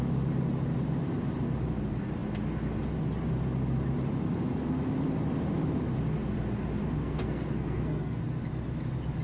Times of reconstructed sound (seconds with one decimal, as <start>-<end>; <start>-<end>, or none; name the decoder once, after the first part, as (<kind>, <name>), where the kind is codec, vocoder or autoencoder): 7.0-8.2 (codec, SNAC)